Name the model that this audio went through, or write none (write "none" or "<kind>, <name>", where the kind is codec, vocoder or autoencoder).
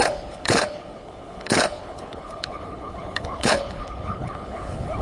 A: codec, HILCodec